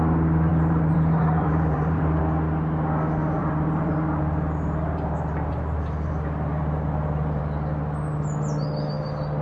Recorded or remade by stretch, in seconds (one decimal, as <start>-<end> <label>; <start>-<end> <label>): 0.0-0.5 recorded; 0.5-2.2 remade; 2.2-3.4 recorded; 3.4-7.4 remade; 7.4-9.4 recorded